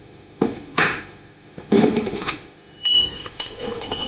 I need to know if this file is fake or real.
fake